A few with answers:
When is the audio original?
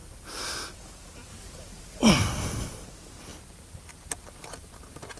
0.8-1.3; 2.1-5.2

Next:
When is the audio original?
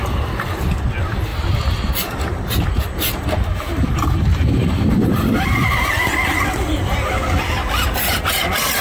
0.0-4.3; 6.8-8.8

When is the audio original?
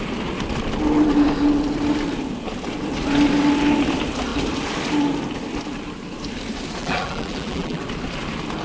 0.0-6.8; 7.8-8.6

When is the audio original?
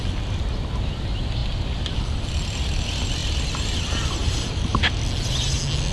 0.0-4.2; 4.8-5.9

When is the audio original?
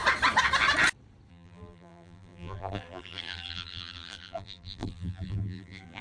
0.0-1.3